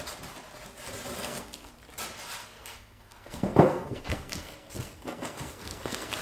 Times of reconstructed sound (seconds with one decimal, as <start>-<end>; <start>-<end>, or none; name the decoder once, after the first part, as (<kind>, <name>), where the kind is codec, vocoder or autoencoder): 1.2-1.7 (codec, SNAC); 2.4-6.2